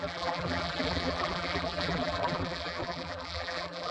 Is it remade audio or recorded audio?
remade